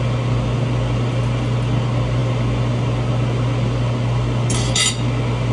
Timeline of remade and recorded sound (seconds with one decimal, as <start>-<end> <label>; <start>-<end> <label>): 0.0-5.5 recorded